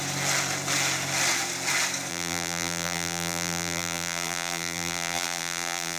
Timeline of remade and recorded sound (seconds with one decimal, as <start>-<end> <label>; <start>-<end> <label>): 0.0-2.1 recorded; 2.1-6.0 remade